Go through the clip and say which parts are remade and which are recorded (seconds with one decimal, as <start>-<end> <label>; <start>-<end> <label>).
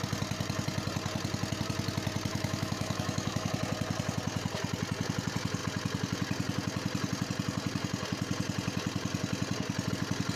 0.0-2.3 recorded; 2.3-3.5 remade; 3.5-10.4 recorded